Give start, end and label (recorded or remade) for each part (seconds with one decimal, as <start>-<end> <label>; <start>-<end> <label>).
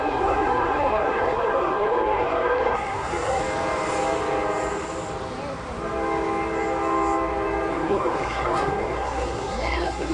0.0-3.4 remade; 3.4-7.7 recorded; 7.7-10.1 remade